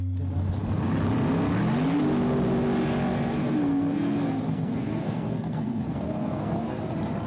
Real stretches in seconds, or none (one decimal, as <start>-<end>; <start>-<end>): 0.0-3.4; 6.8-7.3